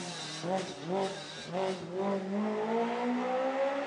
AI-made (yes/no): no